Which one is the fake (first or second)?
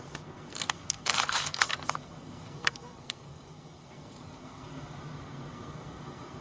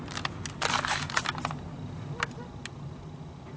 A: first